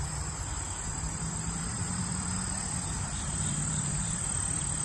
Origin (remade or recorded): remade